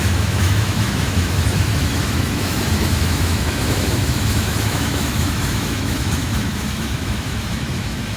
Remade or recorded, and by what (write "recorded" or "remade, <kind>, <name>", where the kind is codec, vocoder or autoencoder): remade, autoencoder, DAC-VAE